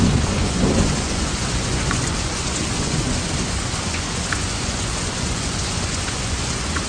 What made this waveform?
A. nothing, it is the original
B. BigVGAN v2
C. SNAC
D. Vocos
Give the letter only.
D